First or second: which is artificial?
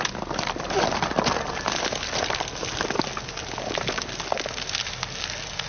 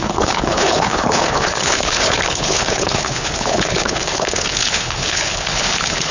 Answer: second